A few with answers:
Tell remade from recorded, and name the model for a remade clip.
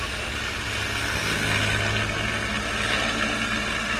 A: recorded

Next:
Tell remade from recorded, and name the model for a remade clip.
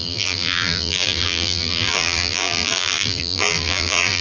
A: remade, vocoder, BigVGAN v2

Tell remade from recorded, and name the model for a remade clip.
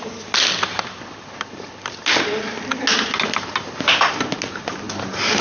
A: recorded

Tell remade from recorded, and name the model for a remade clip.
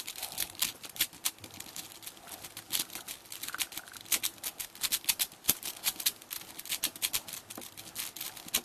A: recorded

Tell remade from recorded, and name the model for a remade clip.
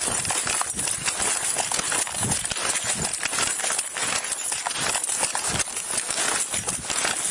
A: recorded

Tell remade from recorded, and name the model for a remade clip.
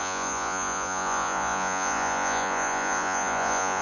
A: remade, vocoder, Vocos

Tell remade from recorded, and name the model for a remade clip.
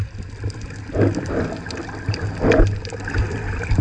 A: recorded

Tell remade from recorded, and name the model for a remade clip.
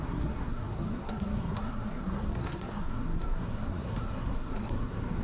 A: remade, codec, SNAC